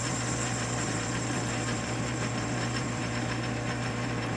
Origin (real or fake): fake